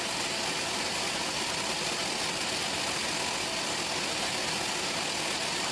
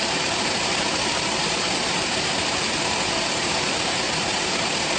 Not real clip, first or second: second